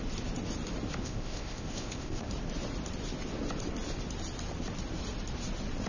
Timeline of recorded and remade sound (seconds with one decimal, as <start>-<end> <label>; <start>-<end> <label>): 0.0-1.0 recorded; 1.0-2.3 remade; 2.3-5.9 recorded